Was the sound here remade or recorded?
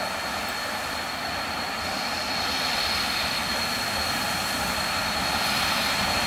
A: recorded